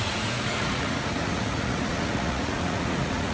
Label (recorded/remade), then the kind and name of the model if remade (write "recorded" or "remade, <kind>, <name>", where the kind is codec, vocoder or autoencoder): remade, vocoder, Vocos